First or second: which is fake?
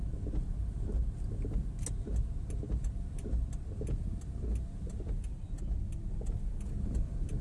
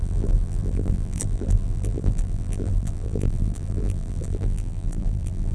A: second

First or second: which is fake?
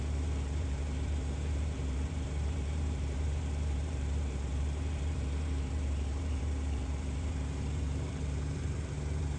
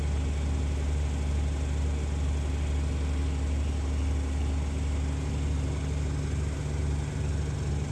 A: first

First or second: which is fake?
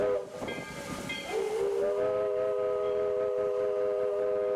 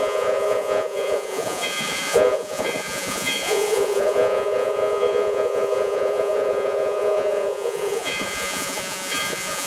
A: second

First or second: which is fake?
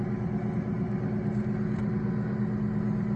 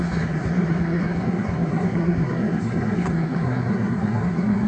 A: second